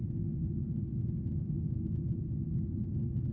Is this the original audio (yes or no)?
yes